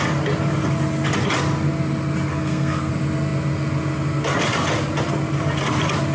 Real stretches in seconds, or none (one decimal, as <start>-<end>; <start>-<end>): 0.0-2.3; 2.9-6.1